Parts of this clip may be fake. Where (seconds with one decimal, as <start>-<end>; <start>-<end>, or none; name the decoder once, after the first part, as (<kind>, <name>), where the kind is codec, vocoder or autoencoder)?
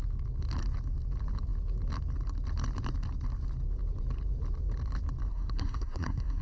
5.3-6.4 (codec, SNAC)